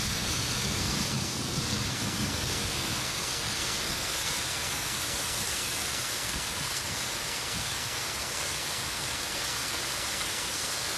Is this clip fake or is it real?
fake